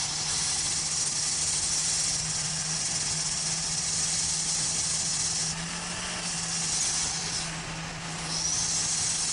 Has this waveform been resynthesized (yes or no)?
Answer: no